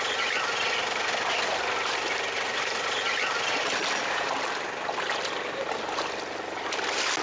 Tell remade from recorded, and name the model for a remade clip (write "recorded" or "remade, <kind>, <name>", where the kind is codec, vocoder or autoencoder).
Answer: recorded